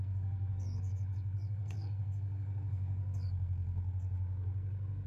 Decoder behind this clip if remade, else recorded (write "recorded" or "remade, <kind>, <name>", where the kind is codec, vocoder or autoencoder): remade, codec, SNAC